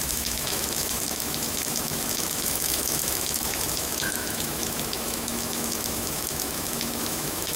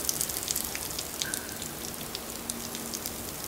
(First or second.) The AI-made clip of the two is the first